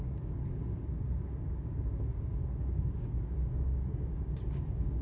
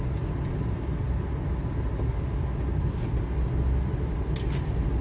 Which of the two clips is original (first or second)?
second